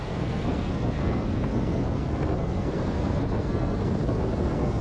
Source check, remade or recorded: remade